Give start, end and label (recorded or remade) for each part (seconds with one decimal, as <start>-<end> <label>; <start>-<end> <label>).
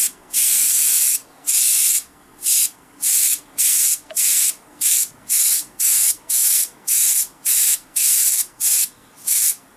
0.0-9.8 remade